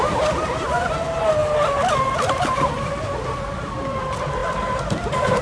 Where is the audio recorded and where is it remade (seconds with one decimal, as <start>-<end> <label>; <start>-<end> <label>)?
0.0-5.4 recorded